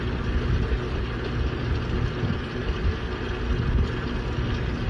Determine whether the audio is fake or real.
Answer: real